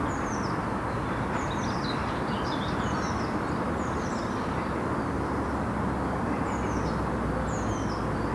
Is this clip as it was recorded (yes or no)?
yes